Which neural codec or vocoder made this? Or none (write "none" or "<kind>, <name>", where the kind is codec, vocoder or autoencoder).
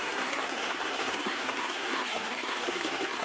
codec, SNAC